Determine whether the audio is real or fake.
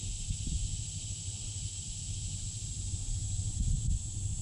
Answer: fake